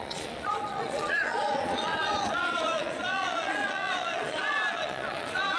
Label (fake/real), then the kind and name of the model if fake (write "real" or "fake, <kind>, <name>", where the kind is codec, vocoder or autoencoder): fake, vocoder, Vocos